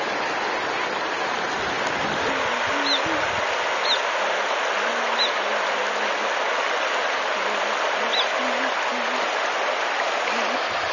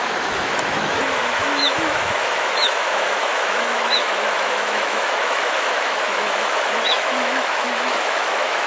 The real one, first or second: first